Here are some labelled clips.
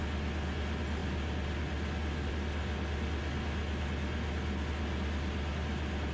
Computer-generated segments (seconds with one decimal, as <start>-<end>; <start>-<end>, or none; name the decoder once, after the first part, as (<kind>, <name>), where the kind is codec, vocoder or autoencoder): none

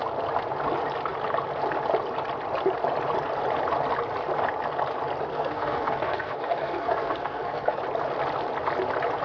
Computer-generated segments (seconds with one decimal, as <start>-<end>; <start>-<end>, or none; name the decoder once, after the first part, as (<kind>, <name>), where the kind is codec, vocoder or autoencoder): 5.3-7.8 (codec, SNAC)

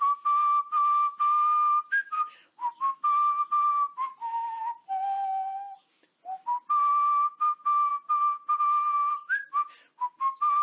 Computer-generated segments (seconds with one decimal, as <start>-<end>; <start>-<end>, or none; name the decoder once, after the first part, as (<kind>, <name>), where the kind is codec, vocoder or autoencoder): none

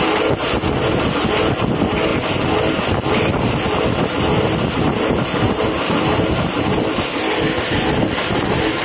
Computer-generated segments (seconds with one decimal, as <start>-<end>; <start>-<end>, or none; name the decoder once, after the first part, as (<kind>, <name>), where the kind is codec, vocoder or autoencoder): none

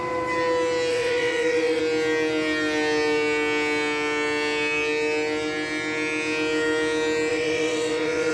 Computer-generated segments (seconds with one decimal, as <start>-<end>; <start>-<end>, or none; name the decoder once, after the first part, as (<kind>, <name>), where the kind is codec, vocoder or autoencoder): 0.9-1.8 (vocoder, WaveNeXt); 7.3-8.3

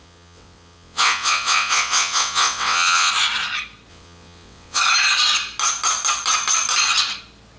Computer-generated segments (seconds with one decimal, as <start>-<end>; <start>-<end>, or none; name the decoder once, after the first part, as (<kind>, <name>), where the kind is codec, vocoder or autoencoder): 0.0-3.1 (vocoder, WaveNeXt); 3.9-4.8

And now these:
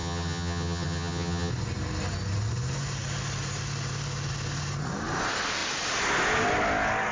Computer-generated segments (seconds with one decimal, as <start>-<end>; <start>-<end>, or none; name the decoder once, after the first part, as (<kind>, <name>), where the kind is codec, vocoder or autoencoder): 0.0-1.5 (vocoder, HiFi-GAN)